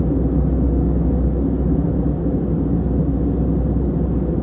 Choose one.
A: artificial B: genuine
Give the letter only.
B